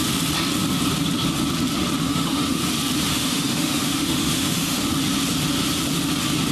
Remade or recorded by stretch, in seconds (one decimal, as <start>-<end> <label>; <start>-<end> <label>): 0.0-2.0 recorded; 2.0-2.6 remade; 2.6-3.1 recorded; 3.1-4.8 remade; 4.8-6.5 recorded